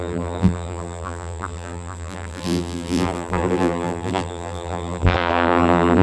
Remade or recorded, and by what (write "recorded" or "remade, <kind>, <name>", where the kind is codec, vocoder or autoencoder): remade, vocoder, BigVGAN v2